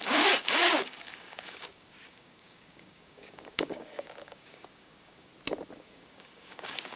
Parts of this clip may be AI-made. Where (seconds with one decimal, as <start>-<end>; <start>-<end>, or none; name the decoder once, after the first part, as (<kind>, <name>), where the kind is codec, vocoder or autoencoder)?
0.0-5.3 (codec, DAC); 5.8-7.0